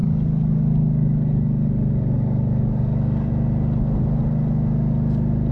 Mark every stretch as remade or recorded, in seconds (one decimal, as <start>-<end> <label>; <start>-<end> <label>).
0.0-3.3 remade; 3.3-5.5 recorded